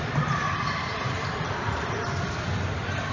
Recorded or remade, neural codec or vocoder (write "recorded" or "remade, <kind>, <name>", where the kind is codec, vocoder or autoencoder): remade, vocoder, BigVGAN v2